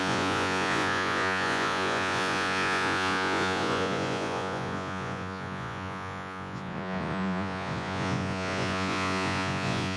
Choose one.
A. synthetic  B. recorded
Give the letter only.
A